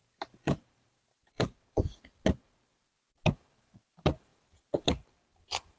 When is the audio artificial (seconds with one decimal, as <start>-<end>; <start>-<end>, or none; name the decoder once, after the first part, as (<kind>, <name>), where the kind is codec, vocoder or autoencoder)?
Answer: 0.0-2.0 (vocoder, BigVGAN v2); 4.3-5.2